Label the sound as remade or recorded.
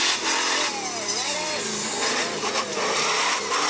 recorded